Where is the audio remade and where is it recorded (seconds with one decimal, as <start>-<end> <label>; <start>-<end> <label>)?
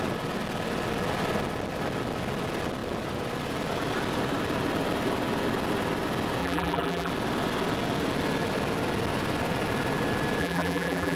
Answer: 0.0-6.4 recorded; 6.4-7.1 remade; 7.1-10.4 recorded; 10.4-11.2 remade